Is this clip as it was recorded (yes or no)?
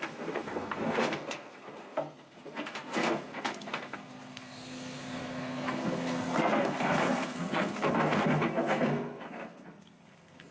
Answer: no